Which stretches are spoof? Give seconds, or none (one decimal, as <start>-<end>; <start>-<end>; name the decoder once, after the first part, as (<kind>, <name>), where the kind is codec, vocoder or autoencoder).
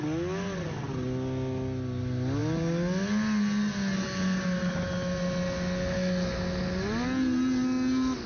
none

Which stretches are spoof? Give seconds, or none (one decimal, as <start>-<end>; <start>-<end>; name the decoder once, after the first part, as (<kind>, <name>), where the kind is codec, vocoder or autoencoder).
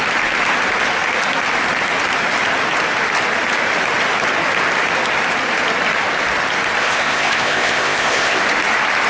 6.8-8.4 (codec, ZipCodec)